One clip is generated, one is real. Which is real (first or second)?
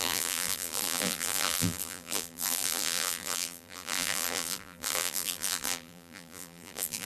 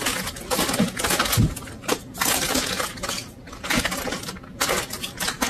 second